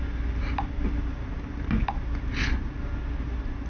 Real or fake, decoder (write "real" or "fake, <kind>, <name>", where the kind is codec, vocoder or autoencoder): real